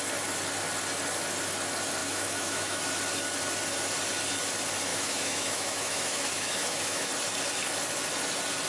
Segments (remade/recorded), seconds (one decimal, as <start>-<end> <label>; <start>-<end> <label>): 0.0-2.0 recorded; 2.0-2.8 remade; 2.8-4.9 recorded; 4.9-7.1 remade; 7.1-8.7 recorded